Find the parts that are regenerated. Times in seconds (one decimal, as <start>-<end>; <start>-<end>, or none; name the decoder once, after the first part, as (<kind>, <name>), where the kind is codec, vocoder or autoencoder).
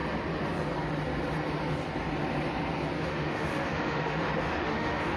3.0-5.2 (autoencoder, DAC-VAE)